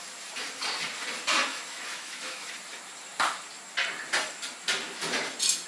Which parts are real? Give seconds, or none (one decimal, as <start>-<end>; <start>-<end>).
0.0-1.5; 2.5-5.7